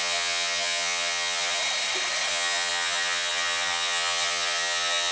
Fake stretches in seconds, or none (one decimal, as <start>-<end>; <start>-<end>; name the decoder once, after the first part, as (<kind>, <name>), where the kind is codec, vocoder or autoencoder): 0.0-1.6 (vocoder, HiFi-GAN); 2.3-5.1